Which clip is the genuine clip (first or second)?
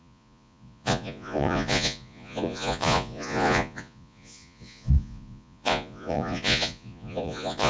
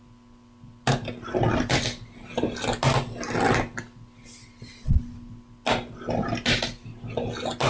second